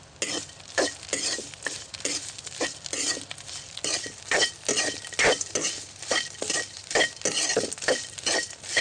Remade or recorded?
recorded